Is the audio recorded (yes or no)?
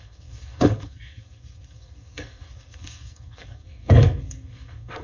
no